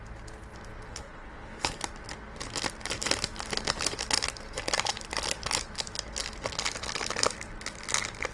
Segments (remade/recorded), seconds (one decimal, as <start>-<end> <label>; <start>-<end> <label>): 0.0-0.9 recorded; 0.9-1.8 remade; 1.8-8.3 recorded